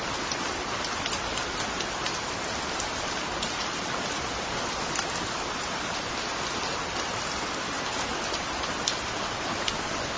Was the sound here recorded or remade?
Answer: recorded